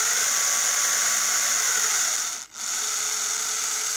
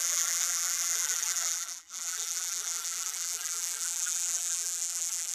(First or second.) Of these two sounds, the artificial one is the second